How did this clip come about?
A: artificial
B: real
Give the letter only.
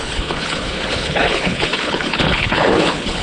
A